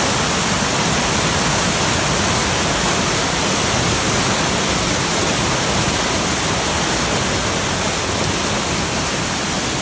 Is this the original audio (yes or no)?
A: yes